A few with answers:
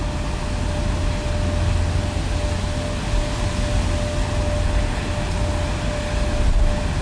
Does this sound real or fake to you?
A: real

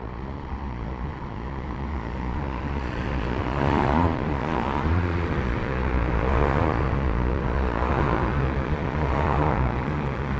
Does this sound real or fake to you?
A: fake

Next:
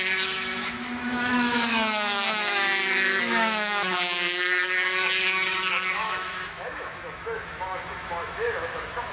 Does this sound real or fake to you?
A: fake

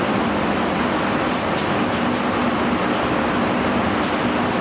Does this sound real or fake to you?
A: real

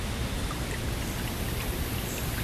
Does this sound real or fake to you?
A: real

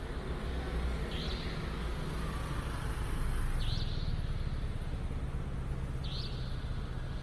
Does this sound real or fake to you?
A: real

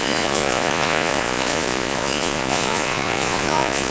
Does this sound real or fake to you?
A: fake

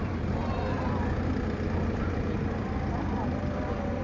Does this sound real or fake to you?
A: fake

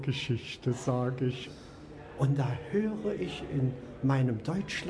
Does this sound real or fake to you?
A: real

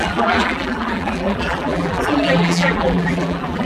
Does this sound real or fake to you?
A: fake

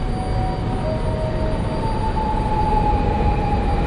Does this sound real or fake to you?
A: real